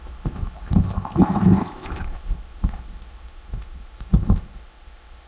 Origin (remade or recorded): remade